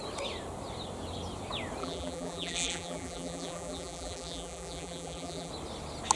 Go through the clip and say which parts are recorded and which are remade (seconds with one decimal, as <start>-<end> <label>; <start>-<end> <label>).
0.0-1.8 recorded; 1.8-5.5 remade; 5.5-6.2 recorded